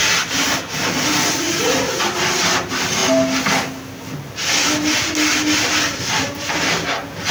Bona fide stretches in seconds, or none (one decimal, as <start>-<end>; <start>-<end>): 0.0-7.3